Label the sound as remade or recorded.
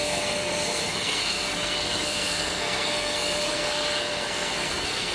remade